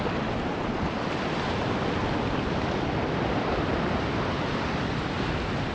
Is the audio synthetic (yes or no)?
no